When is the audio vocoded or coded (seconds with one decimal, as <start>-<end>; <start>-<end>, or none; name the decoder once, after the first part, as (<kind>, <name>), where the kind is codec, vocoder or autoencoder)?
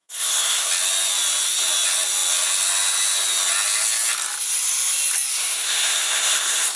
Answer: 0.0-0.7 (codec, SNAC); 5.3-6.8